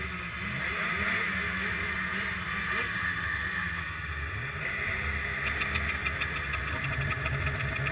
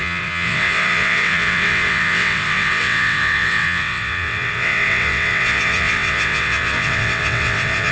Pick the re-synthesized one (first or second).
second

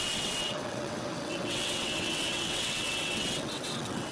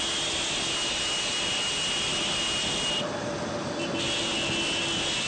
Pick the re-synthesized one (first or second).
first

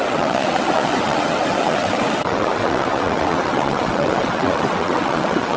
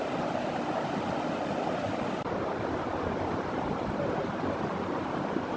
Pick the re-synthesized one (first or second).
first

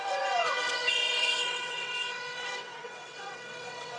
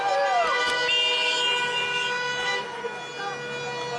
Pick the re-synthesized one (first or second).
first